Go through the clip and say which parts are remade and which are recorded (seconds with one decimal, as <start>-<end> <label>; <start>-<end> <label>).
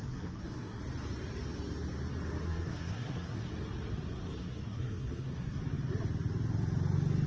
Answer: 0.0-0.8 remade; 0.8-2.4 recorded; 2.4-3.5 remade; 3.5-4.4 recorded; 4.4-5.6 remade; 5.6-7.3 recorded